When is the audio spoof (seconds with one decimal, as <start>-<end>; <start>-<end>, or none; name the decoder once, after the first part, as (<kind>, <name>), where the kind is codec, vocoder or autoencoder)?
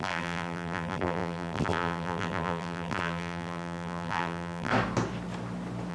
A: 0.0-4.7 (vocoder, BigVGAN v2)